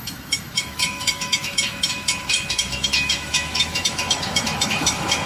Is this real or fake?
fake